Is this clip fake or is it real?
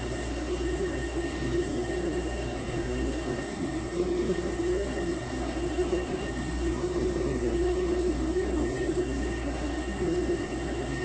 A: fake